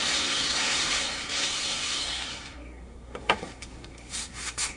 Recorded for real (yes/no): no